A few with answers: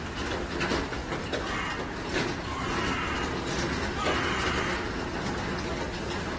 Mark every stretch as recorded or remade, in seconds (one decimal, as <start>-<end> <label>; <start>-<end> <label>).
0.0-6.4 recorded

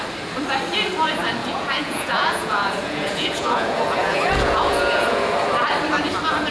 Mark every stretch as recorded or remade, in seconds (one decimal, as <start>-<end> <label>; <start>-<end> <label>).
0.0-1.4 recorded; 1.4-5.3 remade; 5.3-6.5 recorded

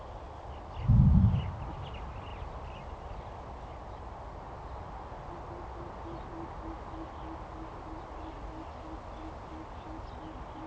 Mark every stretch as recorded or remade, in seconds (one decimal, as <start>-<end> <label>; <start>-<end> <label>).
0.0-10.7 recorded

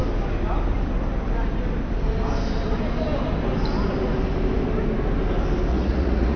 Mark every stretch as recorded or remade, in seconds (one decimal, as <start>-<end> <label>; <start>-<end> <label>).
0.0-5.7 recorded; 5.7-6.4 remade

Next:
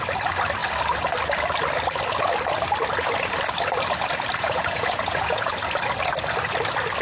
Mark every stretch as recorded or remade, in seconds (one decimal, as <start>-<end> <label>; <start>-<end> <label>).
0.0-4.4 recorded; 4.4-5.5 remade; 5.5-7.0 recorded

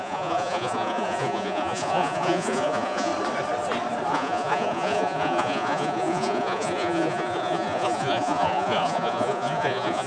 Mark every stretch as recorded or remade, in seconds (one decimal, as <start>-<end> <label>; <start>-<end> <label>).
0.0-3.1 remade; 3.1-4.1 recorded; 4.1-10.1 remade

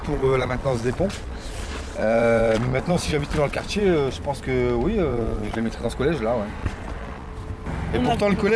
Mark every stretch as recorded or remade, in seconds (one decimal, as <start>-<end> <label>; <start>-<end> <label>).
0.0-3.8 remade; 3.8-5.1 recorded; 5.1-5.9 remade; 5.9-6.6 recorded; 6.6-7.3 remade; 7.3-8.6 recorded